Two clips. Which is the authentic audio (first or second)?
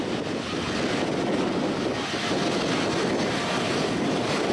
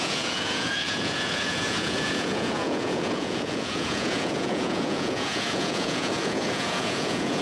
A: first